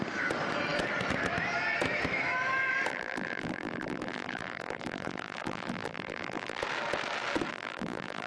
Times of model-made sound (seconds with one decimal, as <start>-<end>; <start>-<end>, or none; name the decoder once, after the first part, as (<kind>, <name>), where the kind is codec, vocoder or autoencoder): 2.9-6.6 (vocoder, BigVGAN v2); 7.5-8.3